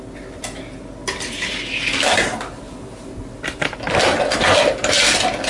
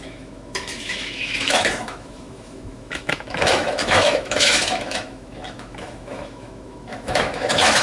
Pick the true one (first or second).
first